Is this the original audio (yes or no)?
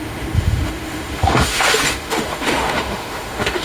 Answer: no